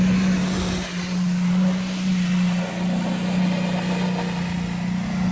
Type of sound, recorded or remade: recorded